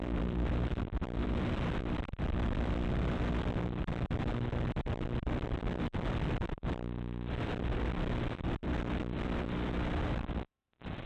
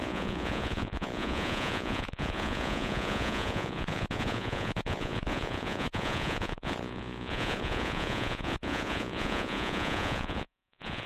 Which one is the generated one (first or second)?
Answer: second